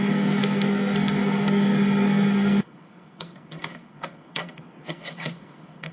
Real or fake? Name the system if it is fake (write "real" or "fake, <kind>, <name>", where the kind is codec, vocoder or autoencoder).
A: fake, codec, SNAC